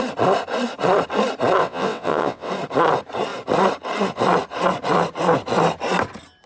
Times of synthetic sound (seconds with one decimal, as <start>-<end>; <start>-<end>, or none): 1.6-2.5